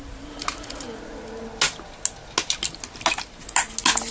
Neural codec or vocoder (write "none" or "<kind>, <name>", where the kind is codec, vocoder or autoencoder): none